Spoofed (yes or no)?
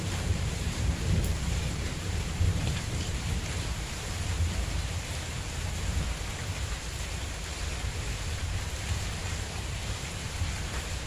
yes